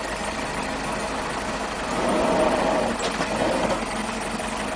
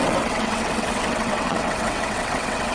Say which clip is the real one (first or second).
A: first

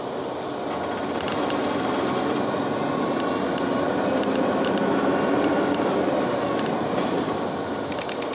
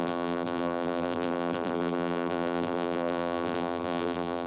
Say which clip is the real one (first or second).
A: first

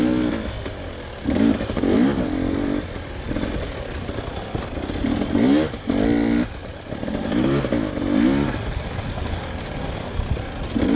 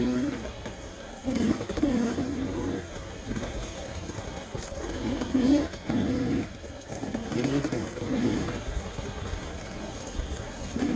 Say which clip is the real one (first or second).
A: first